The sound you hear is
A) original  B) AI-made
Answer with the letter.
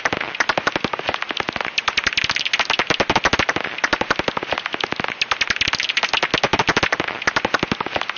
A